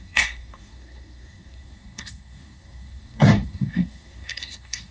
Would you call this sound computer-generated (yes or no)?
yes